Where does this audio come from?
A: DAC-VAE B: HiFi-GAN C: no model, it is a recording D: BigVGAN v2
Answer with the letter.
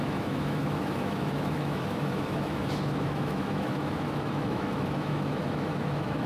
A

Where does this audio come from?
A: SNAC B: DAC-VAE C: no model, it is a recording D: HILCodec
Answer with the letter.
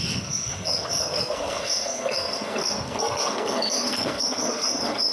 A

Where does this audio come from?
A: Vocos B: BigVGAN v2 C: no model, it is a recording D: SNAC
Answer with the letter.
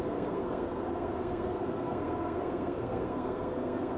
D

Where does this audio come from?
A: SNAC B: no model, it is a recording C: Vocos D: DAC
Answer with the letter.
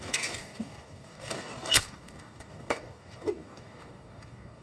D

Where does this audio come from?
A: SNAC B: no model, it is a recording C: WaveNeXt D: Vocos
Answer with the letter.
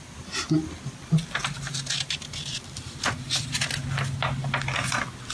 B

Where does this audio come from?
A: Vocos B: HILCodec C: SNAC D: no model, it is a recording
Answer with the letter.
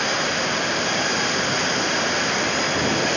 D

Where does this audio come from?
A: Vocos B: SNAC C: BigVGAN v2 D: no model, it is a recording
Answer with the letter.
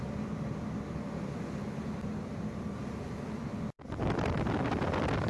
D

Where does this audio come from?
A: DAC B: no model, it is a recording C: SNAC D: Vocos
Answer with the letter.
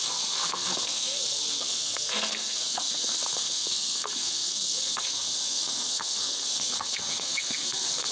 C